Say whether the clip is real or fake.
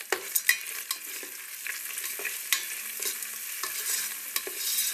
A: real